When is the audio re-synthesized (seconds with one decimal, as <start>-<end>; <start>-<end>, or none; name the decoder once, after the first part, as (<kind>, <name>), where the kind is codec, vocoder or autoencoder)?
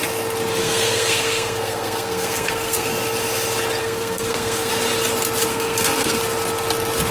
0.6-2.9 (codec, SNAC); 3.8-4.7; 5.5-6.2